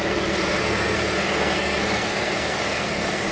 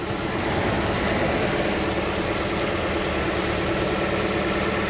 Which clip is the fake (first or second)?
first